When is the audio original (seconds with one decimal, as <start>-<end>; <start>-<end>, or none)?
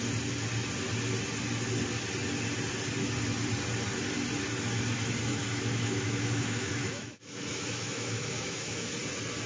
0.0-5.3; 8.9-9.5